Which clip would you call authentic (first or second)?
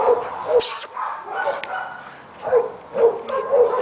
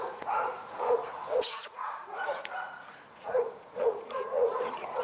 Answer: first